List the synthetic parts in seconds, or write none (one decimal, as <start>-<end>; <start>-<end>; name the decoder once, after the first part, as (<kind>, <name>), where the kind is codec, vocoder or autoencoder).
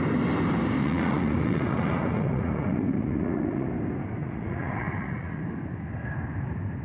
0.8-3.7 (vocoder, Vocos); 4.2-5.4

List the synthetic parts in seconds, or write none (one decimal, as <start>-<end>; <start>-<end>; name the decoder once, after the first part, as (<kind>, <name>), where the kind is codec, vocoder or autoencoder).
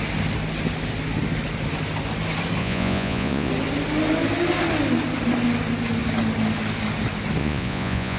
2.6-3.5 (vocoder, Vocos); 7.4-8.2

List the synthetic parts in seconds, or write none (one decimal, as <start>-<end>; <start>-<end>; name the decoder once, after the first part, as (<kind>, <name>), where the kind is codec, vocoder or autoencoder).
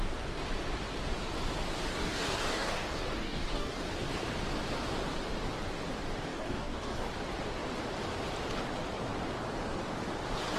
1.9-3.8 (codec, DAC); 6.3-7.1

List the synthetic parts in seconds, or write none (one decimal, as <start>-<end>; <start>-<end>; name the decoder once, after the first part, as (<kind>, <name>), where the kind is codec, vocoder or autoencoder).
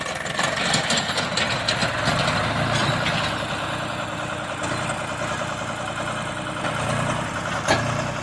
none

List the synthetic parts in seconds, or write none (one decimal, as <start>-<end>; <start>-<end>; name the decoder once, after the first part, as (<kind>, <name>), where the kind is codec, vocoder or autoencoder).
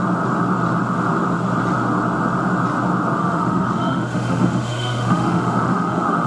3.2-6.3 (autoencoder, DAC-VAE)